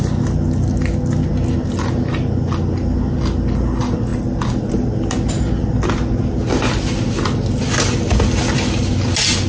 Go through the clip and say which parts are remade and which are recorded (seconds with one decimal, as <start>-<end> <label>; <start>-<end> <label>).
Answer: 0.0-9.5 recorded